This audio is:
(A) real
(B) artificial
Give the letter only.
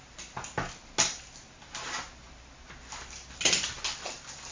A